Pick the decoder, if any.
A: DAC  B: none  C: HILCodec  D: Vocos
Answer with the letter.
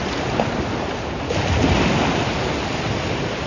B